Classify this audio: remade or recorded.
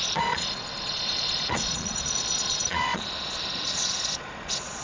remade